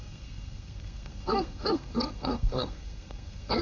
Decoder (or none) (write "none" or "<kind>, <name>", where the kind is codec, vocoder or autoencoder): codec, SNAC